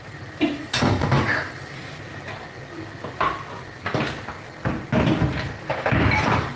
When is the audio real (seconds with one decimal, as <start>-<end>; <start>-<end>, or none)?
1.8-5.7